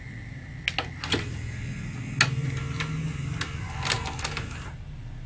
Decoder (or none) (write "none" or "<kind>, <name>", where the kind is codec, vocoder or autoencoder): none